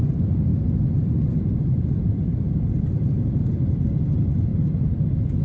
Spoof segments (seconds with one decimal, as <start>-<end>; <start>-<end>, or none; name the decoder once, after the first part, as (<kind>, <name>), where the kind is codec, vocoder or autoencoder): 0.5-3.7 (vocoder, BigVGAN v2); 4.5-5.4